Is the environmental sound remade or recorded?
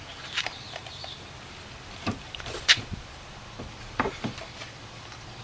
remade